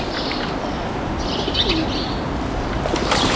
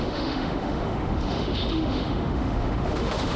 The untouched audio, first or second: first